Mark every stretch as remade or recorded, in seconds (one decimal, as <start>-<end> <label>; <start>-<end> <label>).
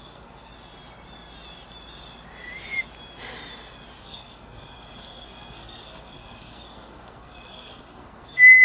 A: 0.0-0.5 remade; 0.5-4.0 recorded; 4.0-8.6 remade